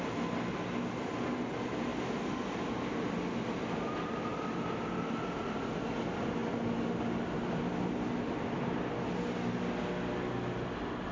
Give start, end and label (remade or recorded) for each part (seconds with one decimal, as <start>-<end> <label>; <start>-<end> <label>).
0.0-11.1 recorded